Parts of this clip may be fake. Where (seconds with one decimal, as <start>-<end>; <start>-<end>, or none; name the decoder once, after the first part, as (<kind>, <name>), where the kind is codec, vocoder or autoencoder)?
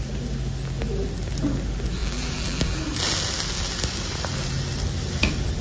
2.0-2.8 (vocoder, BigVGAN v2)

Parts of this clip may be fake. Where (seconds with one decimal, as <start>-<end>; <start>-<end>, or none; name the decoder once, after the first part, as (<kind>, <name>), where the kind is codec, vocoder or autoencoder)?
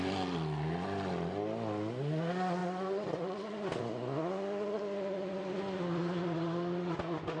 2.6-3.8 (vocoder, BigVGAN v2)